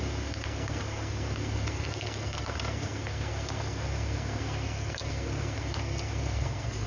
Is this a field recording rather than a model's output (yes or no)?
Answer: no